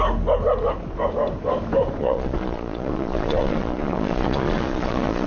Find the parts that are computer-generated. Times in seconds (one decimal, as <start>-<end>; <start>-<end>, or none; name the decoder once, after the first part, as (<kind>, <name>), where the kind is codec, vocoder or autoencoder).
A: 2.0-5.3 (vocoder, Vocos)